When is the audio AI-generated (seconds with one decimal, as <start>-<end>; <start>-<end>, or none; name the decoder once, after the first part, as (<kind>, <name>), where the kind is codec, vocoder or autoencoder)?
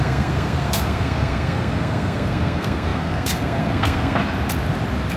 0.0-4.2 (codec, SNAC)